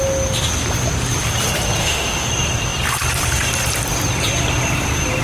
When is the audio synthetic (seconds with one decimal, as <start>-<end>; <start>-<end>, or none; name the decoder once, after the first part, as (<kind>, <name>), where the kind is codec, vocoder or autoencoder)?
1.8-2.3 (autoencoder, DAC-VAE)